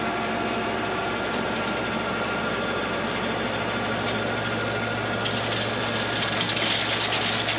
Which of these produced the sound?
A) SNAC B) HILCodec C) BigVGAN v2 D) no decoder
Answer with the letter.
D